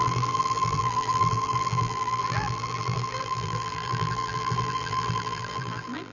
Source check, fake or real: fake